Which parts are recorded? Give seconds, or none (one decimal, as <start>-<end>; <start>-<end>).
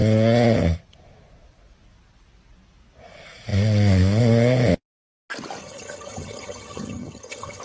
0.0-5.6